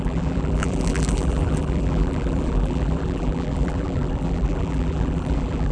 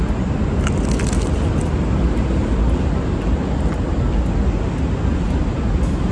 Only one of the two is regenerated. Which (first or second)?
first